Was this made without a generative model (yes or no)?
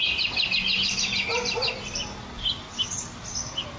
yes